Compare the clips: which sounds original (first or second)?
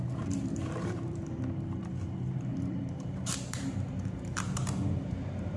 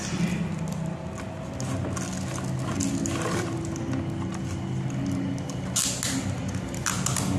second